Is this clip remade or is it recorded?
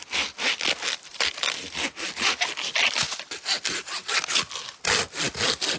recorded